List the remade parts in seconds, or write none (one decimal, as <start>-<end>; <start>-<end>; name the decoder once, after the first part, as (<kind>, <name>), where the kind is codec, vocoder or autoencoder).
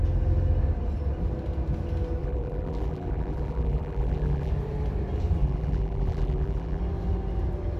2.2-4.5 (vocoder, BigVGAN v2); 5.4-6.8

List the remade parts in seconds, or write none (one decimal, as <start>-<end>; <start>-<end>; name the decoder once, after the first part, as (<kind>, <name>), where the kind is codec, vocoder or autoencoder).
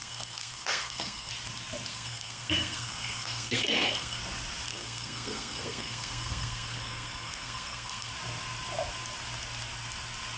0.0-1.3 (codec, SNAC); 1.9-4.2; 4.7-8.1